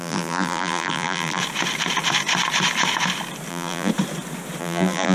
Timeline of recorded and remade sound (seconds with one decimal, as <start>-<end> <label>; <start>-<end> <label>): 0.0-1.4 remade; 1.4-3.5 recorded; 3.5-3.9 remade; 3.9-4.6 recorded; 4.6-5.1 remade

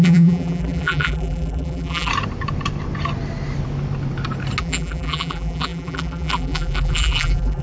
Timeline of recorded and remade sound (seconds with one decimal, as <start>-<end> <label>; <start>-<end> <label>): 0.0-2.1 remade; 2.1-4.6 recorded; 4.6-7.6 remade

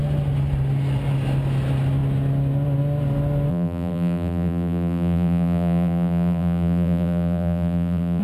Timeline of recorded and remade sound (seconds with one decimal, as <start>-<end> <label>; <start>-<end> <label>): 0.0-3.5 recorded; 3.5-8.2 remade